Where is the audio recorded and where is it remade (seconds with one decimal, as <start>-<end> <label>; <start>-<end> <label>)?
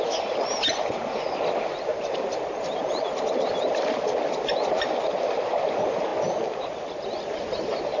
0.0-1.9 recorded; 1.9-3.2 remade; 3.2-8.0 recorded